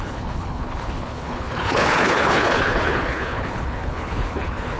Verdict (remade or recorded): remade